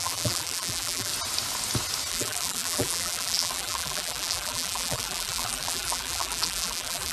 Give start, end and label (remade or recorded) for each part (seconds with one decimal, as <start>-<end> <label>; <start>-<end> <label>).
0.0-1.1 remade; 1.1-2.1 recorded; 2.1-7.1 remade